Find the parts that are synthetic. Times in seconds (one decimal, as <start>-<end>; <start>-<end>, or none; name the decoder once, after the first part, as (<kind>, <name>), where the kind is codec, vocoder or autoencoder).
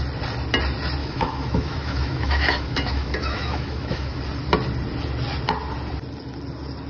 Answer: 1.0-4.2 (autoencoder, DAC-VAE)